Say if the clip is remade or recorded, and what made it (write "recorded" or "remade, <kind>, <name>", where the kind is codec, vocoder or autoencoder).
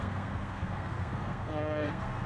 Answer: remade, codec, SNAC